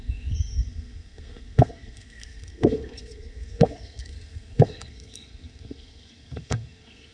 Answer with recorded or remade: remade